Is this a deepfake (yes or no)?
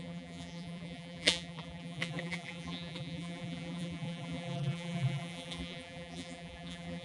yes